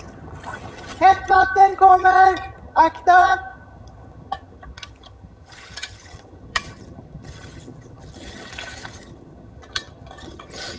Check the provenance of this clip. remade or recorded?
remade